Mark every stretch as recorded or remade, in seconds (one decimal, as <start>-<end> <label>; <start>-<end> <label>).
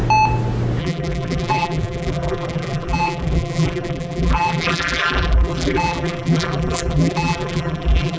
0.0-0.8 recorded; 0.8-8.2 remade